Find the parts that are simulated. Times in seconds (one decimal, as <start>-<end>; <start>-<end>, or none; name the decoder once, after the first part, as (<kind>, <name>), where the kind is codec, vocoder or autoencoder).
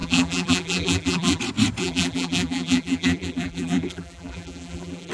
0.0-1.4 (vocoder, BigVGAN v2); 1.8-5.1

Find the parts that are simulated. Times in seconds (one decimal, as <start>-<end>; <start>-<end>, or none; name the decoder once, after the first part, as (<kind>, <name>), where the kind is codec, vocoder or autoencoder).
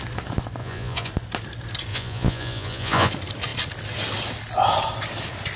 0.6-1.1 (vocoder, Vocos); 1.9-3.1